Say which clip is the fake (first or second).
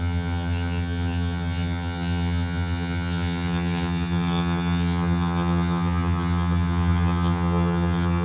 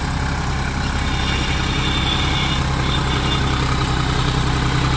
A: first